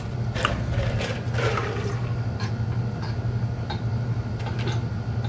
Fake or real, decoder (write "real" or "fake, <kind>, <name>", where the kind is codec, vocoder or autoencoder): real